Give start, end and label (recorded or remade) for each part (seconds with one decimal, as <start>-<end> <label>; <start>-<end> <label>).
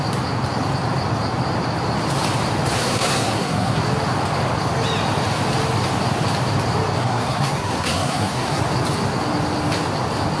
0.0-2.8 recorded; 2.8-3.8 remade; 3.8-7.0 recorded; 7.0-8.6 remade; 8.6-10.4 recorded